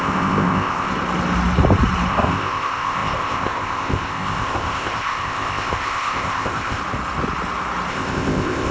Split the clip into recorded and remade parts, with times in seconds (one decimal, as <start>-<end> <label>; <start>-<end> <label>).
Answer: 0.0-0.9 remade; 0.9-2.1 recorded; 2.1-6.8 remade; 6.8-7.9 recorded; 7.9-8.7 remade